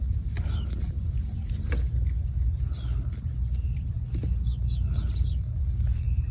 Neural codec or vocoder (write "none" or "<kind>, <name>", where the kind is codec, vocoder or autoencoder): none